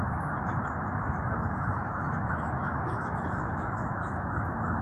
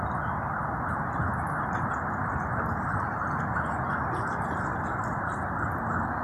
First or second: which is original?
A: second